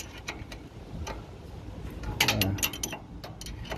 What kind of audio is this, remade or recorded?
recorded